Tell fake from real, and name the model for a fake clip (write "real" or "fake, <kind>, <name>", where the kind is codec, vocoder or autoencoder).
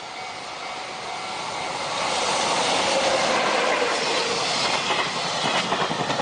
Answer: real